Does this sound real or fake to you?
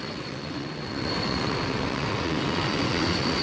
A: fake